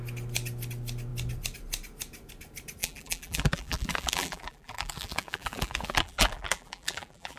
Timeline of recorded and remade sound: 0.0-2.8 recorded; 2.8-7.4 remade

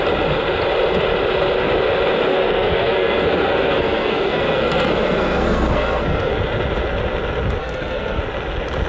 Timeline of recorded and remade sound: 0.0-2.3 recorded; 2.3-6.3 remade; 6.3-7.6 recorded; 7.6-8.2 remade; 8.2-8.9 recorded

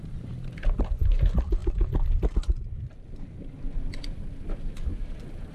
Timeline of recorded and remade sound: 0.0-1.6 remade; 1.6-4.9 recorded; 4.9-5.5 remade

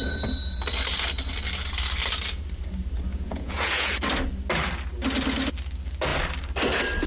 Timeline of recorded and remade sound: 0.0-3.1 recorded; 3.1-3.9 remade; 3.9-7.1 recorded

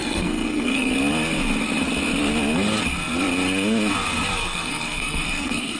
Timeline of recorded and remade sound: 0.0-0.9 remade; 0.9-4.4 recorded; 4.4-5.8 remade

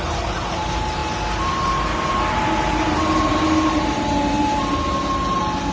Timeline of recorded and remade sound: 0.0-5.7 recorded

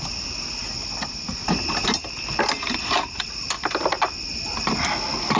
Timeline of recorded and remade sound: 0.0-5.4 recorded